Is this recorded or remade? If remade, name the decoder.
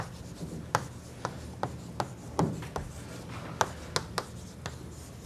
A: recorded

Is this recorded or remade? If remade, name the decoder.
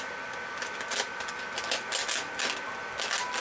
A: recorded